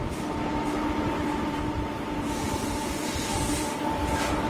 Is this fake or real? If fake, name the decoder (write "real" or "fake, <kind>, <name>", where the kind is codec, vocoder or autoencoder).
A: fake, vocoder, BigVGAN v2